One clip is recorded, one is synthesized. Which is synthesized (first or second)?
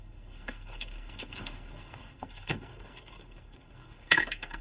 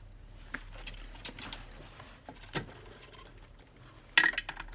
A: first